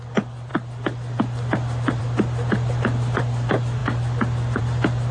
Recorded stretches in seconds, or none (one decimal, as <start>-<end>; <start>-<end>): 0.0-5.1